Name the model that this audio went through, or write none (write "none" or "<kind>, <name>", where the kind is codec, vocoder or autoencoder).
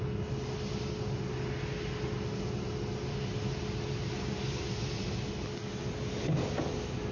none